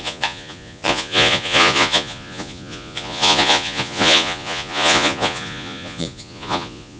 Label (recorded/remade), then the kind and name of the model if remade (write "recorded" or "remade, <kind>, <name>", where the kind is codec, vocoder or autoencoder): remade, vocoder, Vocos